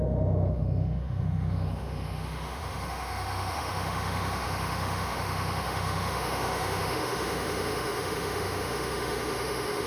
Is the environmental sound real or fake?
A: fake